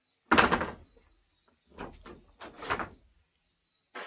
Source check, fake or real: real